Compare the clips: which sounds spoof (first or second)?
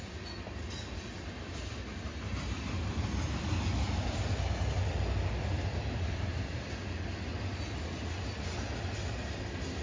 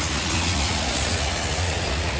second